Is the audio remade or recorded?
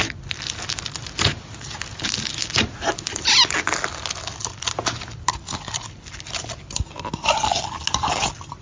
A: recorded